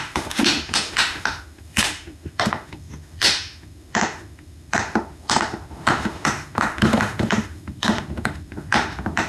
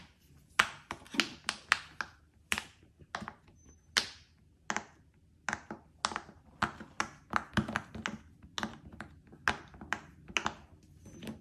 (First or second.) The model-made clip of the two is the first